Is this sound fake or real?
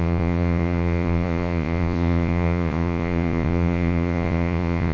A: fake